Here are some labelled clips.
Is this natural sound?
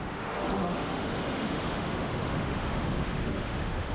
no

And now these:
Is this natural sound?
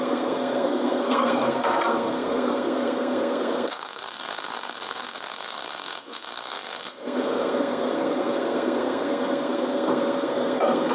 no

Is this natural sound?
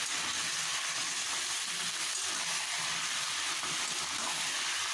yes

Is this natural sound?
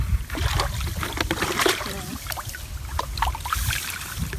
yes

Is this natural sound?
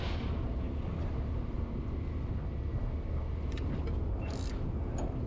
yes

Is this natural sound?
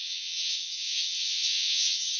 no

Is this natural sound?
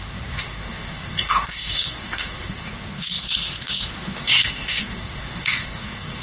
no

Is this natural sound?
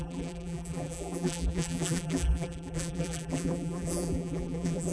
no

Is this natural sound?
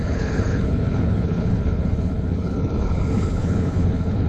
no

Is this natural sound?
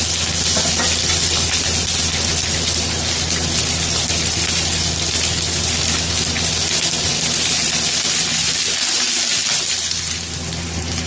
yes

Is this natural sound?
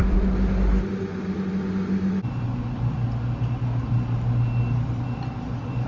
yes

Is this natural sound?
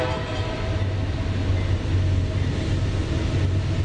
yes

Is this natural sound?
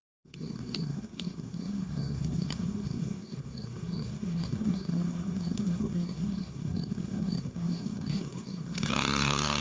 no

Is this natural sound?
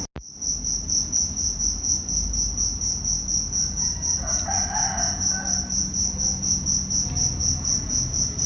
yes